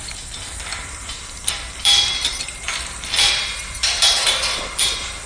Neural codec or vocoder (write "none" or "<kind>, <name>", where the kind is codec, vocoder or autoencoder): vocoder, BigVGAN v2